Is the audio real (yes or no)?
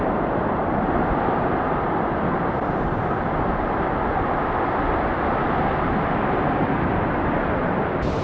yes